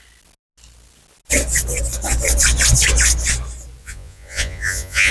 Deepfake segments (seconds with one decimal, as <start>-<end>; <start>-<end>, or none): 3.8-5.1